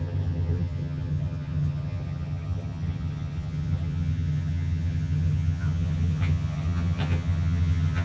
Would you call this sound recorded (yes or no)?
no